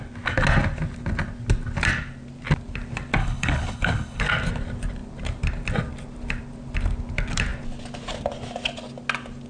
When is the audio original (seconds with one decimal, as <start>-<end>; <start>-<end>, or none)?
0.0-3.2; 4.2-9.5